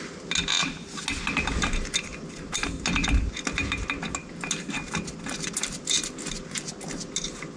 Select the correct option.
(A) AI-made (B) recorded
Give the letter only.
B